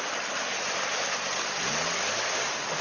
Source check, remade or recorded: recorded